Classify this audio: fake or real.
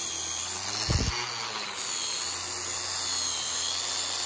real